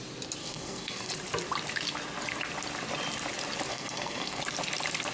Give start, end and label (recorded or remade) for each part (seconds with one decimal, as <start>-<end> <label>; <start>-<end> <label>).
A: 0.0-0.4 recorded; 0.4-1.1 remade; 1.1-3.7 recorded; 3.7-4.4 remade; 4.4-5.1 recorded